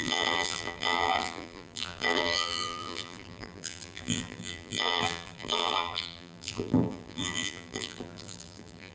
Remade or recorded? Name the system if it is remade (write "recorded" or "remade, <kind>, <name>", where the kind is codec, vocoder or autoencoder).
remade, vocoder, BigVGAN v2